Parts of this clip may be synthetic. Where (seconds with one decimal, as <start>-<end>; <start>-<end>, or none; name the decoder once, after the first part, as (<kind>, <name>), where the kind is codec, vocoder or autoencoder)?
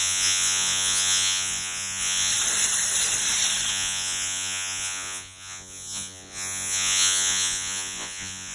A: 0.0-2.3 (vocoder, Vocos); 3.7-8.5